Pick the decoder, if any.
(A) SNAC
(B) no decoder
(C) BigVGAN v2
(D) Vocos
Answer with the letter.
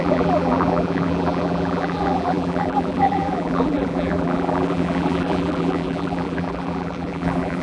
C